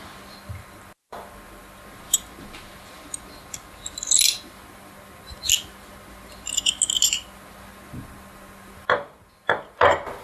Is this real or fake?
real